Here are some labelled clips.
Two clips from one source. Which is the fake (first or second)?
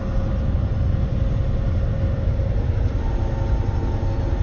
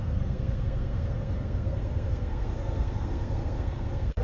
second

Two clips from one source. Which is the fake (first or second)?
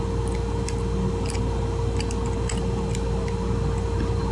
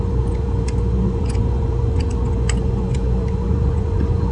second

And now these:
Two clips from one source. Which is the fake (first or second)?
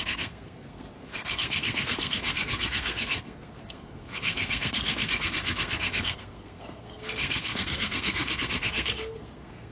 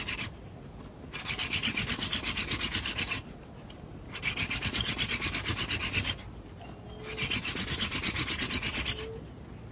first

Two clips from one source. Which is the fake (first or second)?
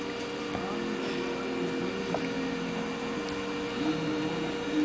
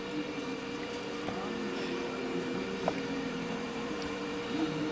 second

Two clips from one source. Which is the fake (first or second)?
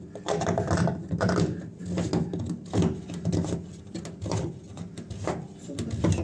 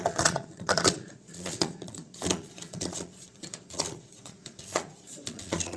second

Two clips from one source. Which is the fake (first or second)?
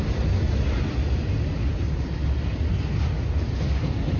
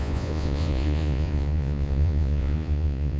second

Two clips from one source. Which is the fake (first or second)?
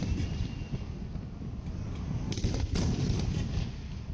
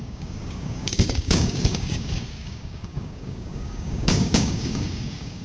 second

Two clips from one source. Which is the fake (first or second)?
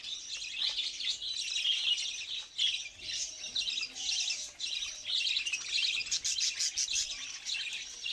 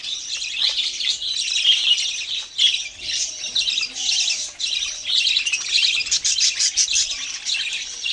second